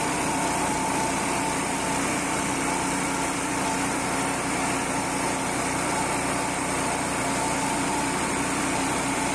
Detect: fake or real real